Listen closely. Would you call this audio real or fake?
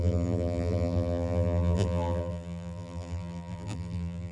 fake